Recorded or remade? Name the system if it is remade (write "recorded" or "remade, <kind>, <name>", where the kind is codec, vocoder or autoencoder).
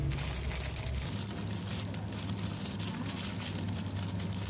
recorded